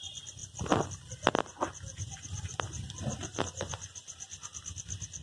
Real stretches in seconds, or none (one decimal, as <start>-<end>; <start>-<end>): 0.4-0.9